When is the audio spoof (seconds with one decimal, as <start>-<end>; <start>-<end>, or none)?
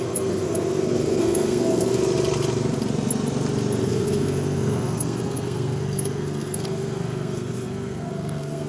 0.0-2.0; 3.8-8.7